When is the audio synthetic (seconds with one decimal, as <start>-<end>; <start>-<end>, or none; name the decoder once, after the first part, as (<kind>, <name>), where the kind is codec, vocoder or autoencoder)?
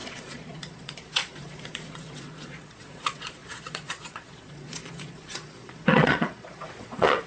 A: 0.0-7.3 (vocoder, Vocos)